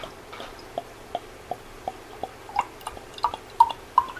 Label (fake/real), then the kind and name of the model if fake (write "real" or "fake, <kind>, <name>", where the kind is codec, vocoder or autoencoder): real